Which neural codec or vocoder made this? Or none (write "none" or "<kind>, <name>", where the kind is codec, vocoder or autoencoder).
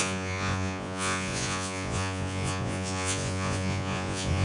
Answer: vocoder, Vocos